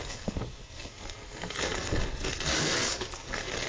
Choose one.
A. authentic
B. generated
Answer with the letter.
B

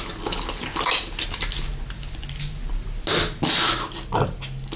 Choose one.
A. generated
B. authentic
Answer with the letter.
B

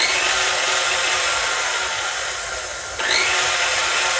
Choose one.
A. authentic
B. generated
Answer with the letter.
A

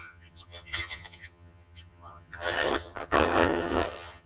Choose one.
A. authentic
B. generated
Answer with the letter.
B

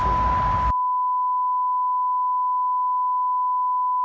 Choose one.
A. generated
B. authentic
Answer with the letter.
B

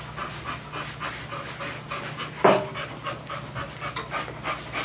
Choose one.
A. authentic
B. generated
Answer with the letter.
A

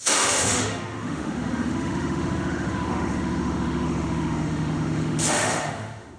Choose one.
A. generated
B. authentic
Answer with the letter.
A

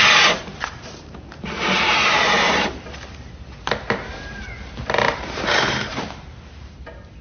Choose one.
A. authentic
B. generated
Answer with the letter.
B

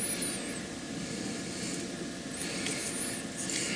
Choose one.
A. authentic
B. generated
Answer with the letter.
A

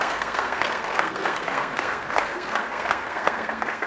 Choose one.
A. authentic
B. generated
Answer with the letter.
B